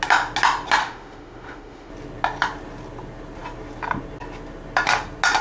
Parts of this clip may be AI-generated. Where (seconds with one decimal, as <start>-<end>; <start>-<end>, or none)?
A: 0.8-1.9